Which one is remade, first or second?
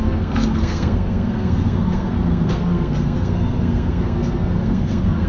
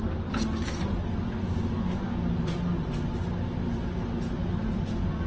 first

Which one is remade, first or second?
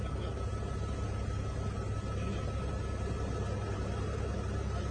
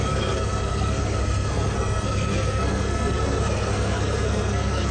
second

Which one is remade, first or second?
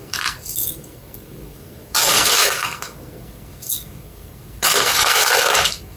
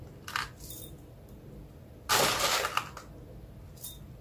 first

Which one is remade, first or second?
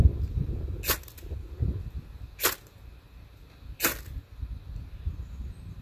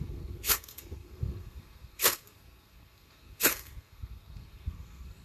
second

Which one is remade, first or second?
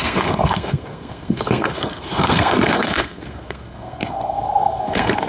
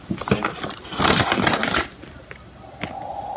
first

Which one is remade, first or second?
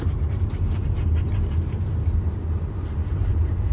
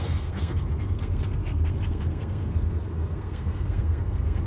second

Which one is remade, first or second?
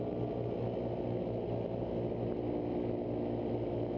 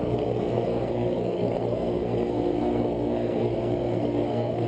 second